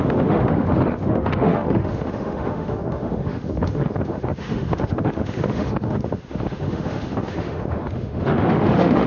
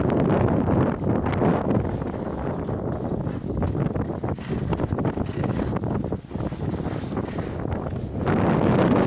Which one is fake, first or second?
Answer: first